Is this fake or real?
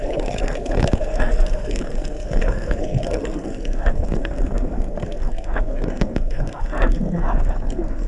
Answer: fake